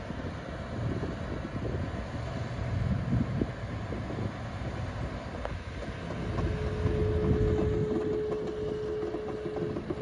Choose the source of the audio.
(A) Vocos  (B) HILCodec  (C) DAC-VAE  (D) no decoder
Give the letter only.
D